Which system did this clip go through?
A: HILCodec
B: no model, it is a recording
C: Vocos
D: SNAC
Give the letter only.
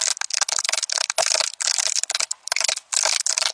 B